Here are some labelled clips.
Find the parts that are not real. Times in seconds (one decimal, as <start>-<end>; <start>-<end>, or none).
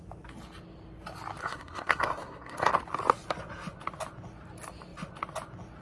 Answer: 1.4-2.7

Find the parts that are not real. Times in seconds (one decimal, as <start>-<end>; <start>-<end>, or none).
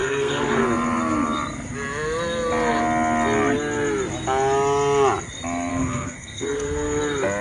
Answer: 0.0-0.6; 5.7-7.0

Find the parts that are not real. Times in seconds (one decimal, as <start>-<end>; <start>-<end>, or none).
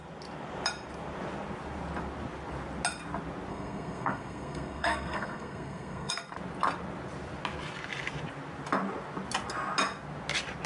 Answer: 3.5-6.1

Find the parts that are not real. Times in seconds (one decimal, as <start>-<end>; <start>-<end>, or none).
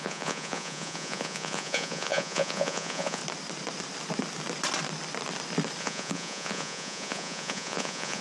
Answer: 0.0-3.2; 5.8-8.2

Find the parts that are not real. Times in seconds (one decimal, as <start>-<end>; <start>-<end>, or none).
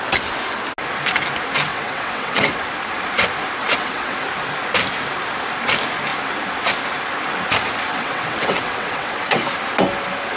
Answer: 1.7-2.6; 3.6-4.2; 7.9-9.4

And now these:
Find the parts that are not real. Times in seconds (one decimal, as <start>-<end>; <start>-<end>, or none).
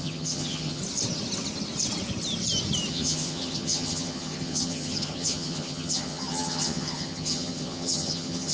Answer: 0.0-0.8; 2.9-8.5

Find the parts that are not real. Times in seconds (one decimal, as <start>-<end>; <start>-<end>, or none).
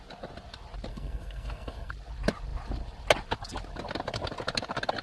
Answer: 0.9-1.9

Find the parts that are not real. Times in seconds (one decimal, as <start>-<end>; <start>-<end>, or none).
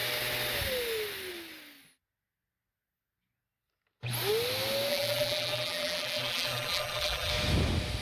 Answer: 4.9-7.3